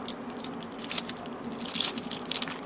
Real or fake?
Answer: real